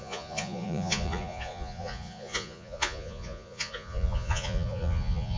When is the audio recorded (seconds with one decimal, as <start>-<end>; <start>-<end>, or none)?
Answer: none